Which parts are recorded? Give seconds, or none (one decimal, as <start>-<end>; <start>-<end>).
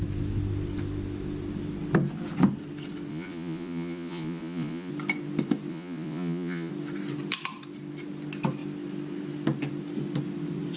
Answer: 0.0-3.1; 4.9-5.7; 6.7-10.8